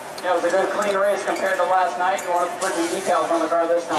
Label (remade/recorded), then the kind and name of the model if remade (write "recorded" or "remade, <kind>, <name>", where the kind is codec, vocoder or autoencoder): remade, vocoder, Vocos